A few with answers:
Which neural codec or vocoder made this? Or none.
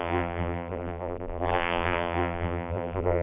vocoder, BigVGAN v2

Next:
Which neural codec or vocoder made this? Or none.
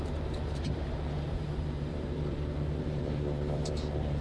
vocoder, BigVGAN v2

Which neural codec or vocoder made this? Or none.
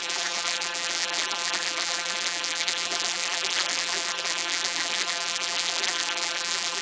vocoder, BigVGAN v2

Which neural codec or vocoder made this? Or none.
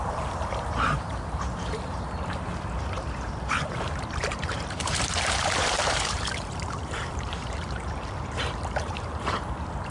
vocoder, BigVGAN v2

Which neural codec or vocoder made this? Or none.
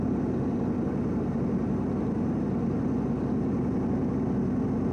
none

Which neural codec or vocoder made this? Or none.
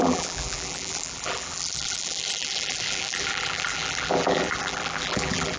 vocoder, BigVGAN v2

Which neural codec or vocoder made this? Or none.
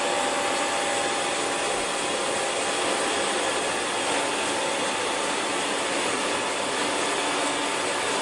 none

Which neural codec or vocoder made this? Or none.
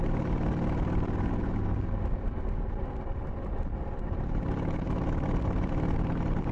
none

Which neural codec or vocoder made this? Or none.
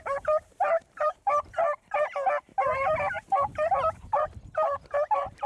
vocoder, BigVGAN v2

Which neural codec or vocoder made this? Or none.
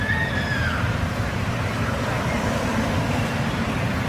vocoder, BigVGAN v2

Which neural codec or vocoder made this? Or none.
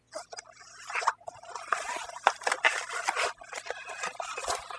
none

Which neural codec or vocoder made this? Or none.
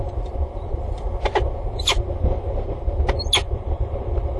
vocoder, BigVGAN v2